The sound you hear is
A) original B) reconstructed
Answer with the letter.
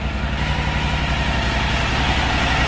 A